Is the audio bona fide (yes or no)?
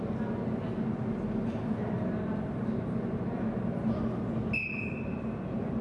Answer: yes